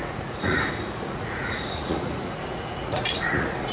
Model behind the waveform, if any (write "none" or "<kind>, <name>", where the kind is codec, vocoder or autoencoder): vocoder, Vocos